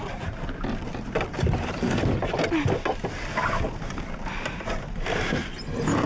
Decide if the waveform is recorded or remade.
recorded